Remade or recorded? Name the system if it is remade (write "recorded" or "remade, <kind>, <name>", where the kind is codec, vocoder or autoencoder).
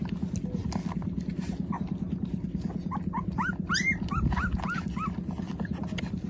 recorded